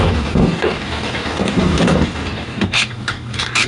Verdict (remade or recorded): remade